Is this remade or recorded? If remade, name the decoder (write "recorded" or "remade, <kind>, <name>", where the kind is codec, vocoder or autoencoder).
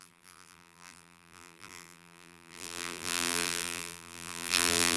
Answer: remade, vocoder, BigVGAN v2